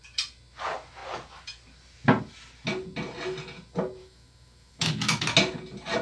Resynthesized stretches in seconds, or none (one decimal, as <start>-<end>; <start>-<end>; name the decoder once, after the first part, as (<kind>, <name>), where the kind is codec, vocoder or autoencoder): 4.0-5.2 (autoencoder, DAC-VAE)